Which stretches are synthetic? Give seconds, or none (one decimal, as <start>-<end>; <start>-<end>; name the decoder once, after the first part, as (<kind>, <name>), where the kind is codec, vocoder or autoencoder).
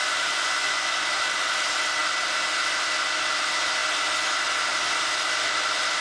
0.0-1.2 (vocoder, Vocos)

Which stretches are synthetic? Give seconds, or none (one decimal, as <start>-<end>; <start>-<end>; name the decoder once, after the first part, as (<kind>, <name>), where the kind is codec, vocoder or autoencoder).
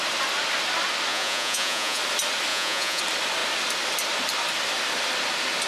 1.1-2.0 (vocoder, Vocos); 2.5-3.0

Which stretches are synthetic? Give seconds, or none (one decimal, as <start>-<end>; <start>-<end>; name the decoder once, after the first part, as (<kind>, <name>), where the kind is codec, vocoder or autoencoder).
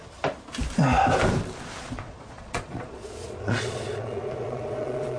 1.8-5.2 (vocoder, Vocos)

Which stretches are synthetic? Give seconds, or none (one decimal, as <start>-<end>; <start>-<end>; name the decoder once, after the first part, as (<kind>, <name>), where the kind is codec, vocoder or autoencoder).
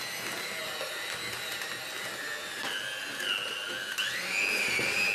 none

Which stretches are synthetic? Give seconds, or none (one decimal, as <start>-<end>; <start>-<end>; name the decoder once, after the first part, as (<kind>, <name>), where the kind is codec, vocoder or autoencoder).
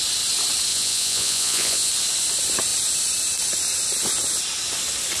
0.7-1.9 (vocoder, Vocos)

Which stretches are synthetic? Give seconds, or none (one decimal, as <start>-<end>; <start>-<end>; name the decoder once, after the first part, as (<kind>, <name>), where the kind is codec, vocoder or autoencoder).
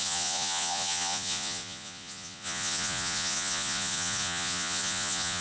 0.0-5.4 (vocoder, Vocos)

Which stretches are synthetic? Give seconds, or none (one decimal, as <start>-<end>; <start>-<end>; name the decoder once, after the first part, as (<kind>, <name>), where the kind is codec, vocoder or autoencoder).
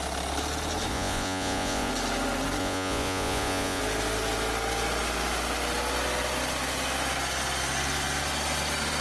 0.9-1.9 (vocoder, Vocos); 2.6-3.8